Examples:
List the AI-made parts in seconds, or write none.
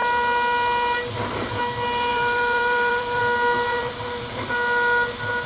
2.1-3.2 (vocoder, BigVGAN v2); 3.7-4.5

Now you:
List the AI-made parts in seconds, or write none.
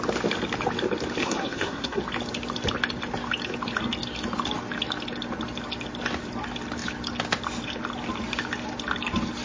1.2-2.0 (codec, SNAC)